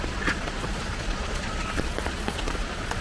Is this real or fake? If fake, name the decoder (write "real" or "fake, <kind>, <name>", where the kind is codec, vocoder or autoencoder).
fake, vocoder, Vocos